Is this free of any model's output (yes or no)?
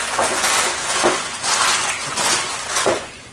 no